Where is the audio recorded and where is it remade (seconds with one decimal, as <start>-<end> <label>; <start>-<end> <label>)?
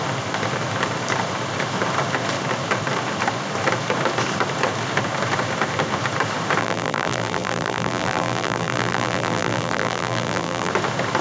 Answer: 0.0-6.6 recorded; 6.6-10.7 remade; 10.7-11.2 recorded